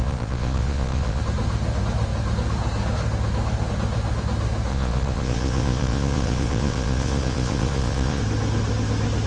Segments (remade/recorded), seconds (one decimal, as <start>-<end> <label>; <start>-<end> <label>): 0.0-1.2 remade; 1.2-4.7 recorded; 4.7-8.2 remade; 8.2-9.3 recorded